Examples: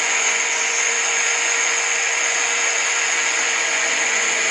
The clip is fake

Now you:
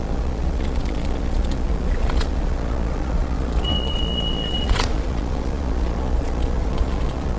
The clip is fake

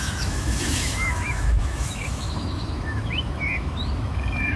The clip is fake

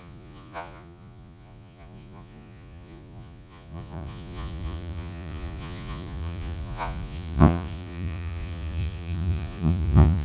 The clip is fake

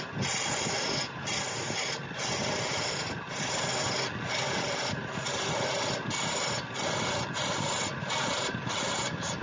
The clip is real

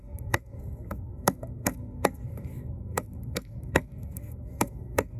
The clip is fake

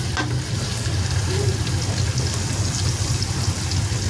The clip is real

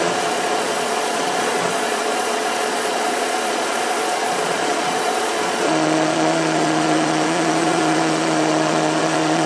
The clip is fake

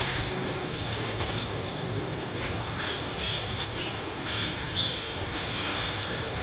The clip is fake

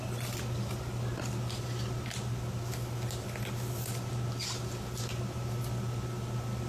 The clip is real